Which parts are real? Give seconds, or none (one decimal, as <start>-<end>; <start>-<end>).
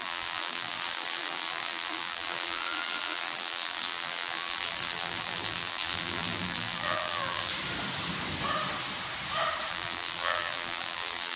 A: 7.5-9.7